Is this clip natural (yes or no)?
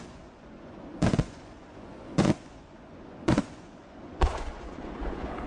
no